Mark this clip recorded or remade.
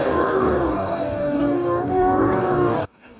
remade